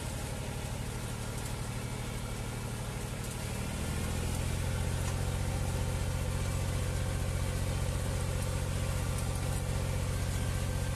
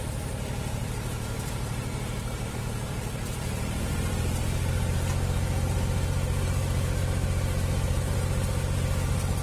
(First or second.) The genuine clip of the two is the first